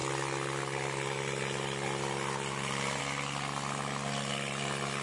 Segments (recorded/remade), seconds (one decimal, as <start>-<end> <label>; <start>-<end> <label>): 0.0-5.0 recorded